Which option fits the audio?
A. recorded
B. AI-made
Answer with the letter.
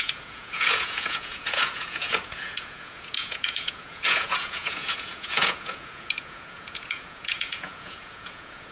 B